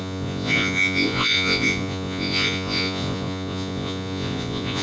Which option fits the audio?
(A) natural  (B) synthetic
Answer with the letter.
B